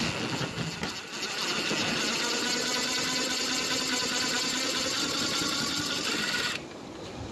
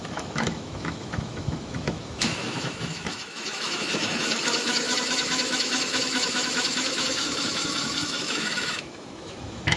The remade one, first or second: second